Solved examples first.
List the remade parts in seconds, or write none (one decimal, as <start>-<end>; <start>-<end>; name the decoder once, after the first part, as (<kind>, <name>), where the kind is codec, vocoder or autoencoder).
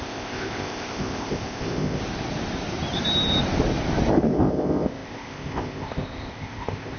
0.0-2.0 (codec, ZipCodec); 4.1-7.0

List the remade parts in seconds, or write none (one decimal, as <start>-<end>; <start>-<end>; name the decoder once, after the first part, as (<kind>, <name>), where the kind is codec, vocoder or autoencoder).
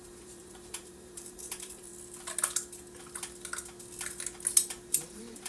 0.0-1.9 (vocoder, BigVGAN v2); 4.9-5.5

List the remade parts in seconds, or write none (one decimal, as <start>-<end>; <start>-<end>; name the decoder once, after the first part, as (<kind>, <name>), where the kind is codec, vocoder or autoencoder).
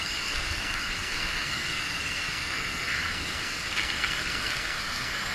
0.0-5.3 (codec, SNAC)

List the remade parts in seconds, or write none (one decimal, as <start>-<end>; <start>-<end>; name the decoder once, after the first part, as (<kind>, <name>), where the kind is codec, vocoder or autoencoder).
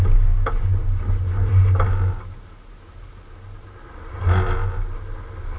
none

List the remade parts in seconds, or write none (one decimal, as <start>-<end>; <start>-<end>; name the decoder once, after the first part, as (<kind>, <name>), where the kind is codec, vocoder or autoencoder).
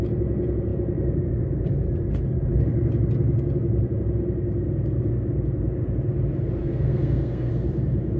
6.6-7.5 (codec, SNAC)